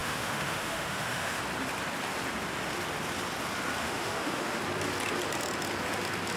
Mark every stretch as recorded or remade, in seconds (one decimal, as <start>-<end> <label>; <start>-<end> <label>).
0.0-1.4 remade; 1.4-3.8 recorded; 3.8-4.6 remade; 4.6-6.4 recorded